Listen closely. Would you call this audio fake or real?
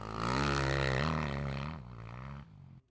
real